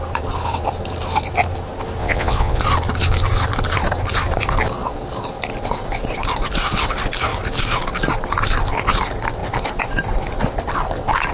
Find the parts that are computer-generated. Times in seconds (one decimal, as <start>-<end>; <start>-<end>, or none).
2.0-2.6

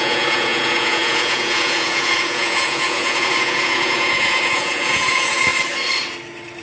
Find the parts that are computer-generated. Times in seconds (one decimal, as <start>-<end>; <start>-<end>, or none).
0.0-5.5

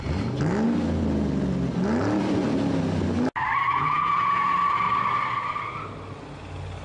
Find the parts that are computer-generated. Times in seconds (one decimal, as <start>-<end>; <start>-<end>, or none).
3.7-4.5

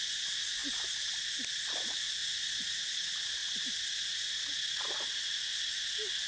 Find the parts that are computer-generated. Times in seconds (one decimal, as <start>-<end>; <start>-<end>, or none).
2.2-2.9